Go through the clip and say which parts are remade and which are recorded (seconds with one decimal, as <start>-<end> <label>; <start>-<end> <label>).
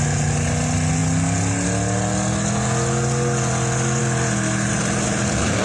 0.0-5.6 recorded